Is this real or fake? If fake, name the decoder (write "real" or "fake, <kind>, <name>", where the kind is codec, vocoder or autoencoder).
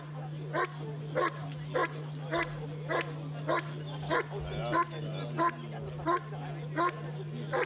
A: real